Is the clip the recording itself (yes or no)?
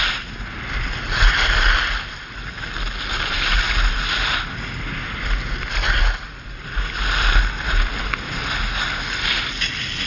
yes